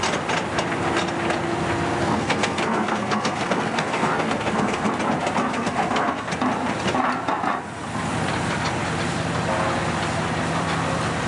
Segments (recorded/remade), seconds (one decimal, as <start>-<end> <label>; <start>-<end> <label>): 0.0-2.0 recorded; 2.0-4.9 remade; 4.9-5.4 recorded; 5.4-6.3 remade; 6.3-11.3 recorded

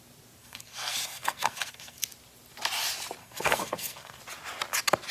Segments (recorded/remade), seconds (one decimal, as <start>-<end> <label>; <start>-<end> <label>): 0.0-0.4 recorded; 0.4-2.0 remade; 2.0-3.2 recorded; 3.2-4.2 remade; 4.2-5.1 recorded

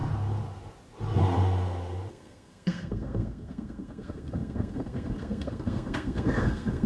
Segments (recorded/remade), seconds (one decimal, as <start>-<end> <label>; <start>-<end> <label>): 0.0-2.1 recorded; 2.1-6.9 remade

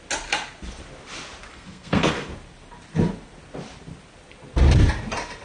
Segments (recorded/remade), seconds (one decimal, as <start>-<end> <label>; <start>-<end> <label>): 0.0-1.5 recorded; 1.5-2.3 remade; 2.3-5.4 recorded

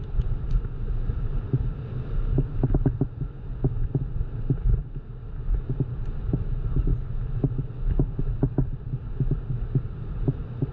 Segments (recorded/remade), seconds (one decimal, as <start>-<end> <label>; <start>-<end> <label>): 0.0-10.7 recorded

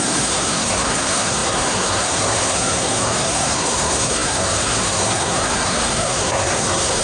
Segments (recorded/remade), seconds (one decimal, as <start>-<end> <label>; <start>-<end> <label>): 0.0-7.0 remade

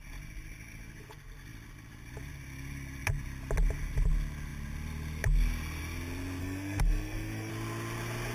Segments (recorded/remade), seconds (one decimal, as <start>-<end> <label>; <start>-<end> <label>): 0.0-6.4 recorded; 6.4-7.5 remade; 7.5-8.3 recorded